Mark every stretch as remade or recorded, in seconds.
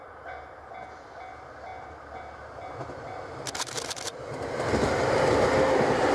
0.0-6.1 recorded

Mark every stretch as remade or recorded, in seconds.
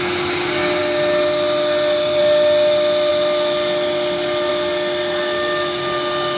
0.0-6.4 recorded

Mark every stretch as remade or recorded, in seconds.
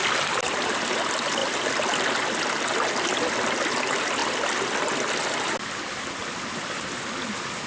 0.0-7.7 recorded